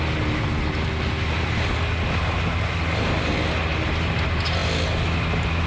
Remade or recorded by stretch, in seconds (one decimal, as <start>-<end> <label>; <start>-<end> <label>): 0.0-5.7 recorded